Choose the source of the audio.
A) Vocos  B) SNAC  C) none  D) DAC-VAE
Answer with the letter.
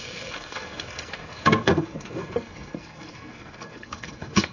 B